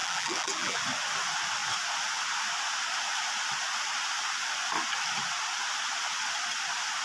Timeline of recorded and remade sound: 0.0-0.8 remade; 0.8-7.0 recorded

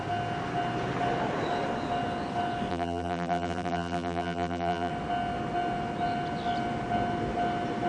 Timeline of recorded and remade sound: 0.0-2.7 recorded; 2.7-4.9 remade; 4.9-7.9 recorded

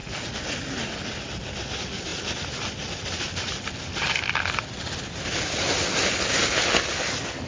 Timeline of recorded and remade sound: 0.0-2.1 recorded; 2.1-5.8 remade; 5.8-7.5 recorded

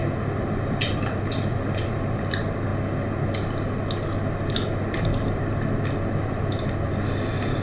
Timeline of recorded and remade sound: 0.0-2.7 remade; 2.7-4.5 recorded; 4.5-7.6 remade